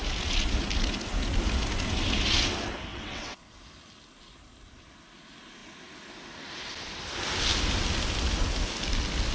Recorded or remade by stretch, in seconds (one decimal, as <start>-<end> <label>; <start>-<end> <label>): 0.0-2.9 recorded; 2.9-3.6 remade; 3.6-9.3 recorded